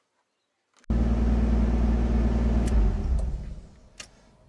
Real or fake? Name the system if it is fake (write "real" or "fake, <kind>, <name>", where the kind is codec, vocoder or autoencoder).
real